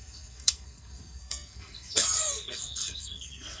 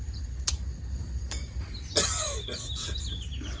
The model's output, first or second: first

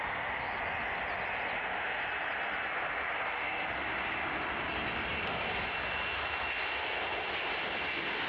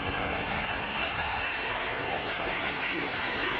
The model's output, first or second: second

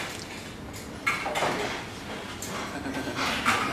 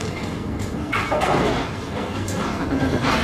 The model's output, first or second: second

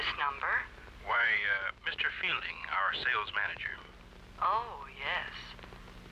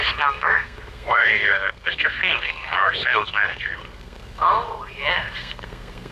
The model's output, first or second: second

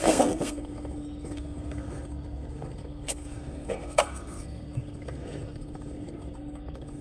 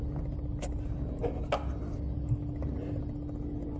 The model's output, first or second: first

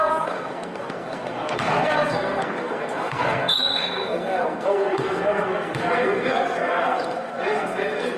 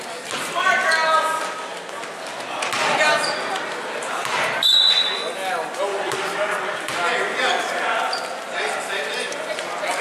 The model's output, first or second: first